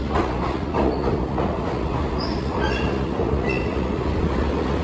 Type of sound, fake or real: fake